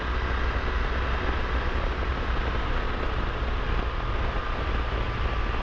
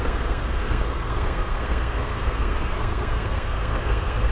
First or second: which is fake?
second